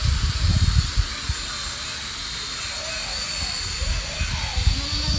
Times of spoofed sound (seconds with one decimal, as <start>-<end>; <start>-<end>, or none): none